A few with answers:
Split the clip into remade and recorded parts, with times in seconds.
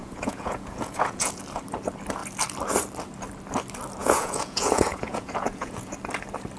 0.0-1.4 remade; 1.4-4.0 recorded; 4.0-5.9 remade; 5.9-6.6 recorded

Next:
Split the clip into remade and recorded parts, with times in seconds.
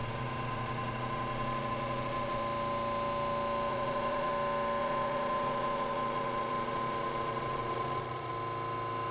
0.0-2.4 remade; 2.4-3.7 recorded; 3.7-4.3 remade; 4.3-4.8 recorded; 4.8-8.3 remade; 8.3-9.1 recorded